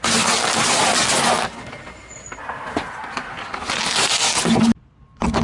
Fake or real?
real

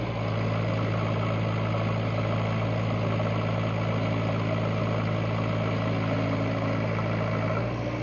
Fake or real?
real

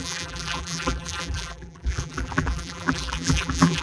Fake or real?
fake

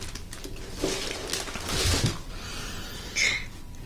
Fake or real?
real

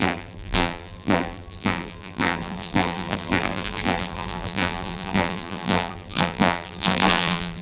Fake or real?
fake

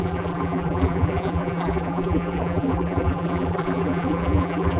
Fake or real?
fake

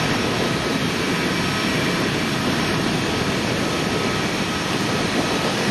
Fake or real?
real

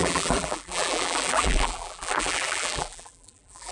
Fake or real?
fake